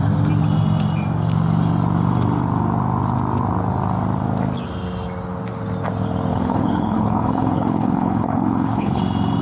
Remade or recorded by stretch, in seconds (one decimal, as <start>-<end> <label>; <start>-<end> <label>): 0.0-6.3 recorded; 6.3-9.0 remade; 9.0-9.4 recorded